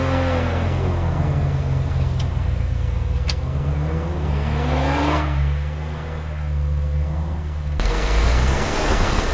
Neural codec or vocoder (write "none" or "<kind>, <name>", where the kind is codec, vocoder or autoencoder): codec, SNAC